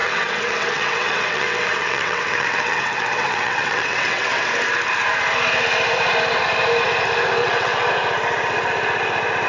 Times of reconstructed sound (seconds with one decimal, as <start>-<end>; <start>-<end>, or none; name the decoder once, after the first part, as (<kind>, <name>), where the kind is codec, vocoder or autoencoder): 0.0-4.5 (vocoder, WaveNeXt); 7.4-7.9